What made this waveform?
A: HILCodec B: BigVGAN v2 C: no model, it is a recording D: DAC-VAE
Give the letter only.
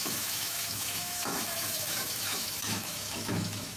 D